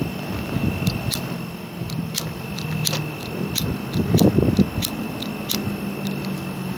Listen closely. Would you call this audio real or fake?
real